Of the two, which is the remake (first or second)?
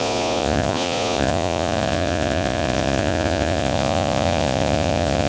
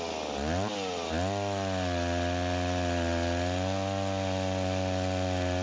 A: first